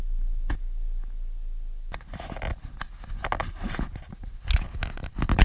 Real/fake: real